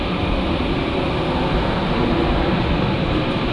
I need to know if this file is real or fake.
real